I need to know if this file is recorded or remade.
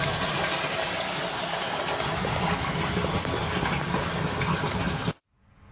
recorded